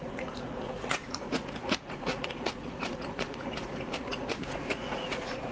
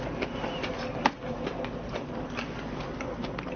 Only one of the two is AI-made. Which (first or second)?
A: first